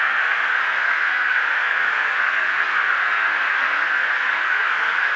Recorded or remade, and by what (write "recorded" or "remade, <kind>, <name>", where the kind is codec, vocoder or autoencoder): remade, codec, SNAC